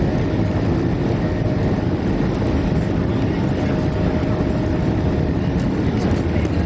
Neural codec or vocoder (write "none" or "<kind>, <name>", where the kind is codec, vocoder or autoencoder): none